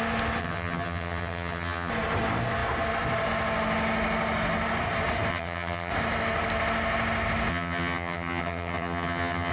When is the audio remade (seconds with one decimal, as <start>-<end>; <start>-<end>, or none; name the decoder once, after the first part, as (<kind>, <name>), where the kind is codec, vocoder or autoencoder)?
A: 0.4-1.9 (vocoder, HiFi-GAN); 5.3-5.9; 7.5-9.5